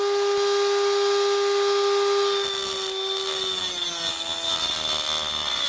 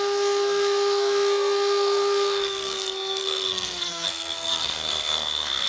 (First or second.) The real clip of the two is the first